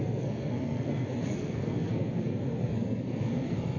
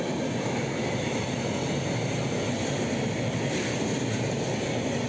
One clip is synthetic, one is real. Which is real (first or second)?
second